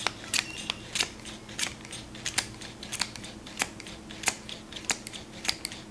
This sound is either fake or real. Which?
real